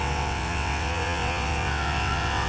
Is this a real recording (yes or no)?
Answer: no